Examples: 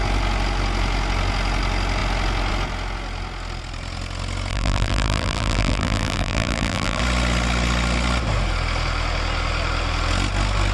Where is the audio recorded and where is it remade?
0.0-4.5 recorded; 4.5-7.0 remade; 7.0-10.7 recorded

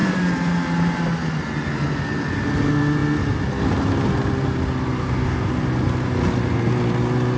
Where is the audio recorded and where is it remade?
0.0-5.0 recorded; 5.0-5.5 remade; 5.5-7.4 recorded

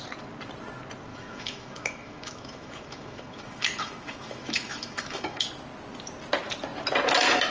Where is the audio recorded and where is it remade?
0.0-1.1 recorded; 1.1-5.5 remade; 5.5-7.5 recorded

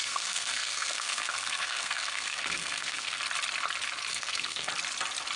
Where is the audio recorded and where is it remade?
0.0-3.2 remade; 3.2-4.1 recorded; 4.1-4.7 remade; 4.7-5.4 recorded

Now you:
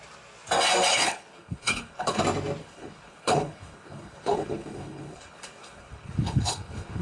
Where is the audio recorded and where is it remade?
0.0-0.9 recorded; 0.9-2.2 remade; 2.2-2.6 recorded; 2.6-7.0 remade

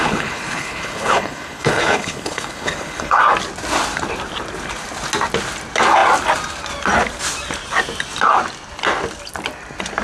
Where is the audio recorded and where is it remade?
0.0-3.2 remade; 3.2-10.0 recorded